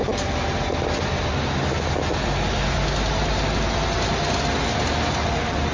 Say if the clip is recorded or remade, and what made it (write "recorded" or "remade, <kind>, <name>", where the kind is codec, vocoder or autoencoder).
recorded